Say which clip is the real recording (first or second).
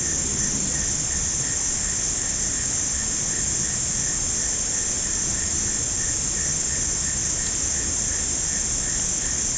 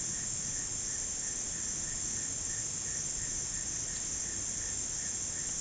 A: first